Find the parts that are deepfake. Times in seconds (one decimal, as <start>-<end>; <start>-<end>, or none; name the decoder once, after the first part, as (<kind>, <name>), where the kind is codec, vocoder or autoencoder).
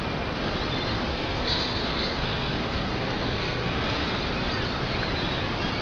1.1-4.2 (codec, SNAC)